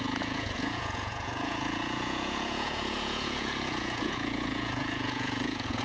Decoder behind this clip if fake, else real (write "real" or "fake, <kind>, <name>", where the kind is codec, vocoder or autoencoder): fake, vocoder, Vocos